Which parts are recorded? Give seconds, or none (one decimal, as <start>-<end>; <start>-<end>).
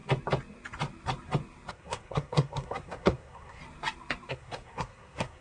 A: 0.0-1.7; 3.6-4.3